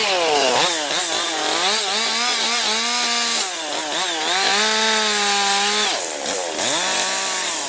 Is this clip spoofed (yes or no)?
no